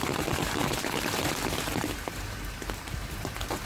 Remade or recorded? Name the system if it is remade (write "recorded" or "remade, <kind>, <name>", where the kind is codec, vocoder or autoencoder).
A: remade, vocoder, BigVGAN v2